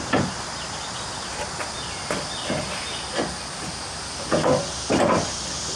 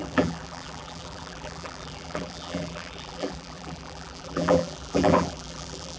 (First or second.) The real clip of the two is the first